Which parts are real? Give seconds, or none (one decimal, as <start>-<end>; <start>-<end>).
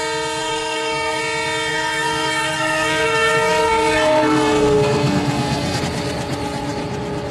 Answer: 0.0-0.4; 1.2-1.7; 5.8-7.3